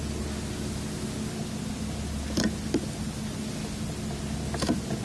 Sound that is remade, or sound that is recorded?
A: recorded